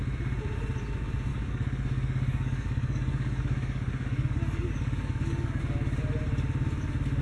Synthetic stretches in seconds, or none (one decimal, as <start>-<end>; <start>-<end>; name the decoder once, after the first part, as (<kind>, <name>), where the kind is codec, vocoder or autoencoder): 1.3-5.6 (codec, DAC)